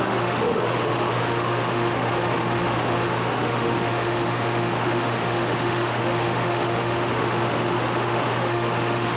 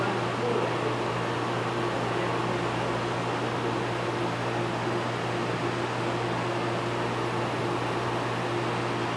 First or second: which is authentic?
second